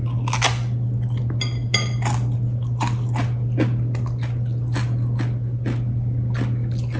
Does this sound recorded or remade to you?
recorded